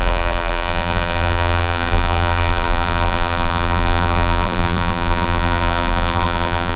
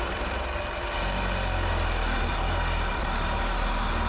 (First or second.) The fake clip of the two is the first